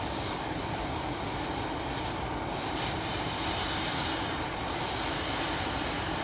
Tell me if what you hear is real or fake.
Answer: fake